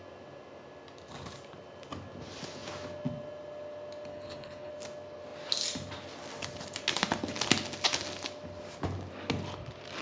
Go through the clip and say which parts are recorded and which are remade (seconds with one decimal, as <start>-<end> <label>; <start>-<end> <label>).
0.0-4.1 recorded; 4.1-4.7 remade; 4.7-10.0 recorded